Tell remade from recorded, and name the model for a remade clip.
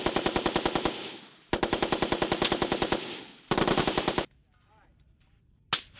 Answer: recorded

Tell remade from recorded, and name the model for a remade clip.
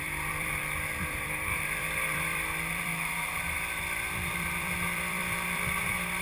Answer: remade, vocoder, BigVGAN v2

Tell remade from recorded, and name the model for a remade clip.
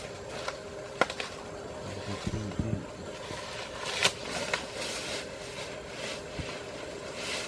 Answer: recorded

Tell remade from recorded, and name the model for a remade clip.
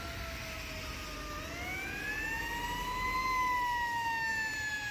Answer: recorded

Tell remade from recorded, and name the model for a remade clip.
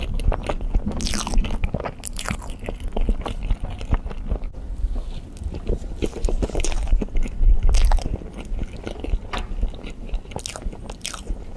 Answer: recorded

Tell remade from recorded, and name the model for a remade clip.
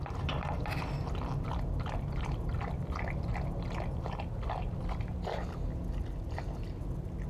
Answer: recorded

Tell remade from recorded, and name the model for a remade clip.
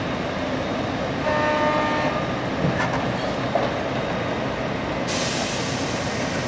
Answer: recorded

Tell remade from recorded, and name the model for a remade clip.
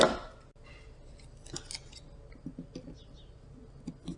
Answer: recorded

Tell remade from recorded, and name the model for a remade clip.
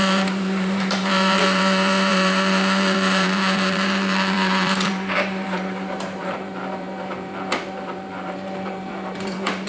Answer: remade, vocoder, BigVGAN v2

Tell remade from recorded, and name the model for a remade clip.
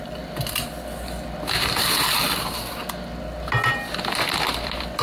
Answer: recorded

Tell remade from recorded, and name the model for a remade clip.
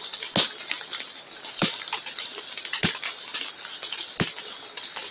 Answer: recorded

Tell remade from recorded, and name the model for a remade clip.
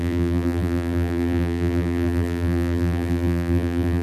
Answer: remade, vocoder, BigVGAN v2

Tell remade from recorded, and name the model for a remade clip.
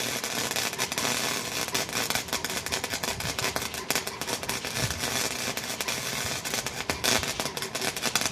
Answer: recorded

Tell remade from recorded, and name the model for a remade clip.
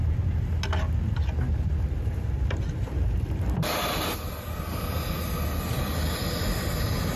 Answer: recorded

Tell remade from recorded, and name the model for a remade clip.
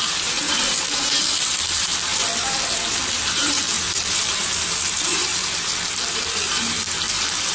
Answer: remade, vocoder, BigVGAN v2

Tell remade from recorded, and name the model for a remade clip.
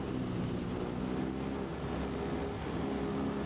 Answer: recorded